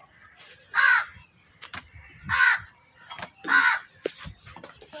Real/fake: real